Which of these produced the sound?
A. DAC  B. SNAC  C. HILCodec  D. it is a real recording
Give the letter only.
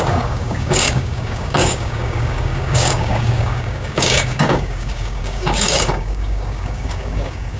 A